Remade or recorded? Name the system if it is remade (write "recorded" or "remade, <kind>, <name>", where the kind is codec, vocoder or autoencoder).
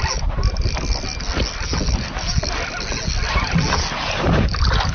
recorded